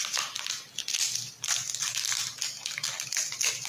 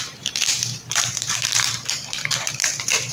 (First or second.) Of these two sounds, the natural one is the first